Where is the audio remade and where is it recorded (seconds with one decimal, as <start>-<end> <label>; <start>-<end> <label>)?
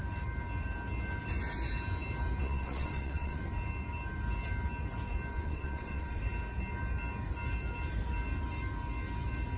0.0-2.4 recorded; 2.4-3.4 remade; 3.4-5.3 recorded; 5.3-6.2 remade; 6.2-9.6 recorded